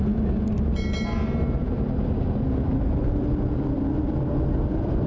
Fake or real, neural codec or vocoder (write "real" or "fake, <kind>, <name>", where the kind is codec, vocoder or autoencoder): real